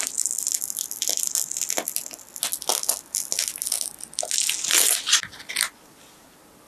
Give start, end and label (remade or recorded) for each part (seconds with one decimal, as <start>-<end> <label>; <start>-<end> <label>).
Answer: 0.0-6.7 recorded

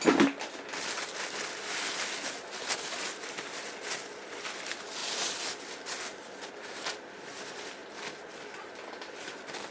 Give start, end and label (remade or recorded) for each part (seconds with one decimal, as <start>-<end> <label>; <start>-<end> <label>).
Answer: 0.0-9.7 recorded

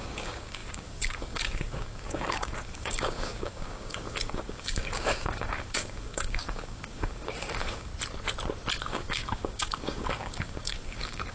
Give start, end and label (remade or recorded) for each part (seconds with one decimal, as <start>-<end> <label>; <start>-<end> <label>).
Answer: 0.0-7.9 remade; 7.9-8.8 recorded; 8.8-11.3 remade

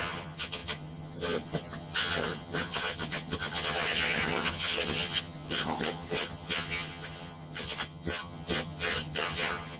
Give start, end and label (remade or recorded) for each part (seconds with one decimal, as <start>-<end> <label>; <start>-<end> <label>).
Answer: 0.0-9.8 remade

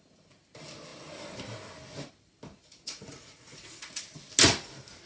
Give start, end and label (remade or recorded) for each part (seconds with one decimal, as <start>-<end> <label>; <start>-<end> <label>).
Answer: 0.0-2.6 recorded; 2.6-4.0 remade; 4.0-5.1 recorded

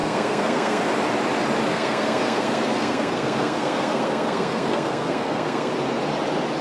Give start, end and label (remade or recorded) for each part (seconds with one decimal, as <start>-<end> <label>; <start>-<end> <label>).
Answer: 0.0-0.8 remade; 0.8-1.7 recorded; 1.7-5.7 remade; 5.7-6.6 recorded

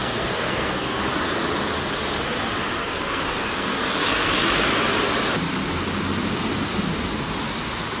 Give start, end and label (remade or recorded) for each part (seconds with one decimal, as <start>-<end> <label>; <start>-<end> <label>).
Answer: 0.0-1.0 remade; 1.0-2.8 recorded; 2.8-4.3 remade; 4.3-8.0 recorded

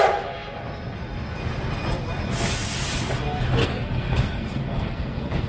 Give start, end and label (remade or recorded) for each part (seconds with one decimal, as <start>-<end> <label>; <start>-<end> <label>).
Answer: 0.0-3.6 recorded; 3.6-5.5 remade